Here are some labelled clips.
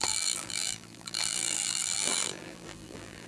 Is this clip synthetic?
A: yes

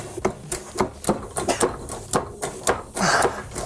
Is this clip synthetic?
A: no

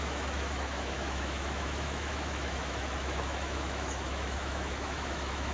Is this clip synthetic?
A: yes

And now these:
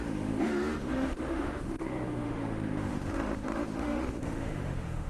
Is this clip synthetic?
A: yes